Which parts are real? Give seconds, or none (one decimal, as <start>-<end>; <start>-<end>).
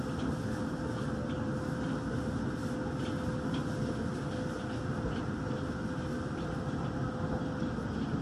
0.0-8.2